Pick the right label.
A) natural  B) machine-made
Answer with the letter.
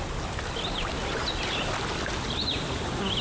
A